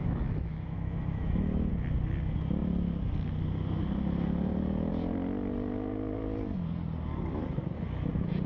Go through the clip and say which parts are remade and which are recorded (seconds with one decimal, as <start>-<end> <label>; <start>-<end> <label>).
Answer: 0.0-1.7 remade; 1.7-8.5 recorded